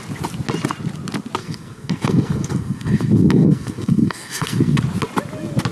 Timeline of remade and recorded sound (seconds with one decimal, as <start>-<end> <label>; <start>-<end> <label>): 0.0-1.4 recorded; 1.4-4.8 remade; 4.8-5.7 recorded